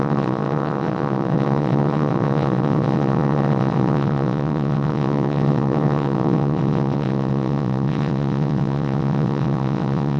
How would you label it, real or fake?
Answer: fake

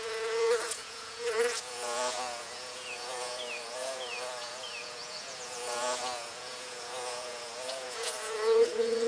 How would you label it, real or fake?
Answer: fake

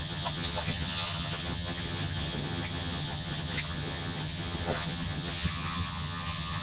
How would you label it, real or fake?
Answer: fake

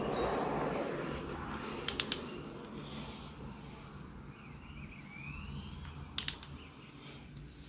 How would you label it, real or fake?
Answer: real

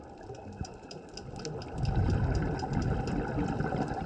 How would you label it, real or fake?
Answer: real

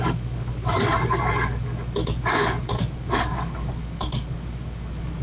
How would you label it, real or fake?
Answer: fake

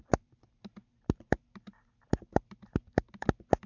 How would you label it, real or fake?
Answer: real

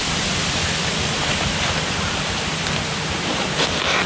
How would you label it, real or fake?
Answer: real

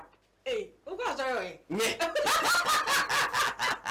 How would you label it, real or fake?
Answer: real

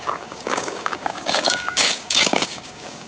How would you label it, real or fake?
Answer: fake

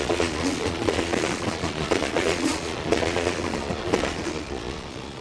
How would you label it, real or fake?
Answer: fake